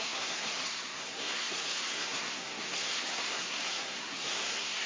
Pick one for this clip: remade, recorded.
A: remade